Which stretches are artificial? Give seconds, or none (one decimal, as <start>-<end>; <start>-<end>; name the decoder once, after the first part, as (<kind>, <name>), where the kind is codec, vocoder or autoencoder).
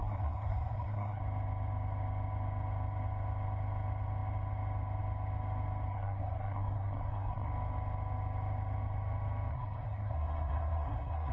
0.0-1.2 (codec, SNAC); 5.9-7.5; 9.5-11.3